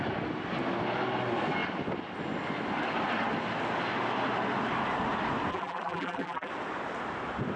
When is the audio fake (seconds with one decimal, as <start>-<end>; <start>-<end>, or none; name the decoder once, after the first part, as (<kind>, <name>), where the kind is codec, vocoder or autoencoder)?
5.5-6.5 (vocoder, BigVGAN v2)